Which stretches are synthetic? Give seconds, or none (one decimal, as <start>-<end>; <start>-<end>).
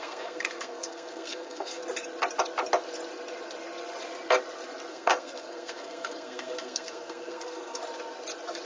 0.0-1.8; 4.9-7.8